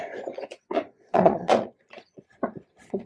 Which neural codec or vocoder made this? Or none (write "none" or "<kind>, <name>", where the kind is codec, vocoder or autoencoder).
vocoder, Vocos